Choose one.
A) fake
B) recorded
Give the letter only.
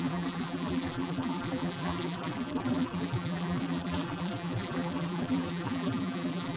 A